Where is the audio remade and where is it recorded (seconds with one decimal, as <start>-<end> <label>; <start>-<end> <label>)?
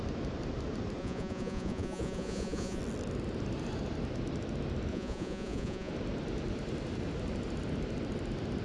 0.0-1.0 recorded; 1.0-2.8 remade; 2.8-4.9 recorded; 4.9-5.9 remade; 5.9-8.6 recorded